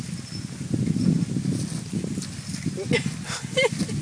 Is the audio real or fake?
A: real